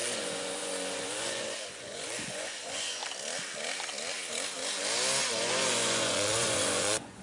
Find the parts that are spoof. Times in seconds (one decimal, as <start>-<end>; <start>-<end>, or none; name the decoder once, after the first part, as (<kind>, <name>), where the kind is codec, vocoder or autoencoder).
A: 0.0-3.0 (vocoder, Vocos); 5.2-7.2